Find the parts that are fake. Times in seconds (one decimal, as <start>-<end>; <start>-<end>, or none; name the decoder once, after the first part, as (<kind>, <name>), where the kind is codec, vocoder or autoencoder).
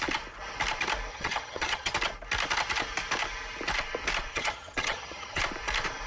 1.1-1.9 (vocoder, HiFi-GAN); 4.3-5.4